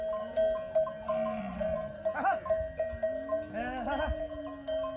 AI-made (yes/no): no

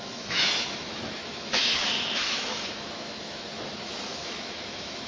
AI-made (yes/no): yes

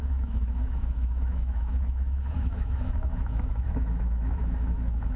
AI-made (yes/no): yes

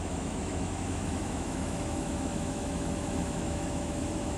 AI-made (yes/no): yes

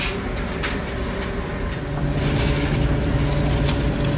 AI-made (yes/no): no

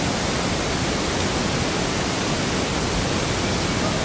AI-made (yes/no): no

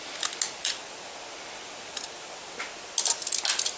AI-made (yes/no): no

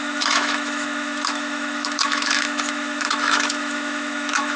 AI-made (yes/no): yes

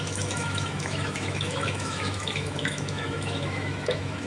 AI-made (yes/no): yes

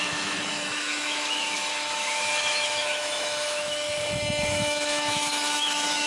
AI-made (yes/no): yes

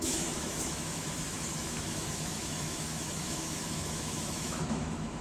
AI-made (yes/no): yes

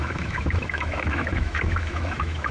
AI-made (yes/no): yes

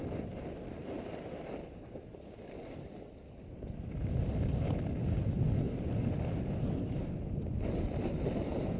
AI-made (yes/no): no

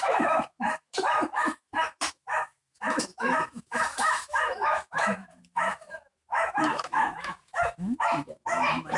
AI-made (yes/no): yes